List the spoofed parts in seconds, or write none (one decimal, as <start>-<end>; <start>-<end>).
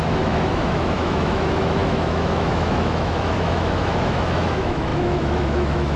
0.0-6.0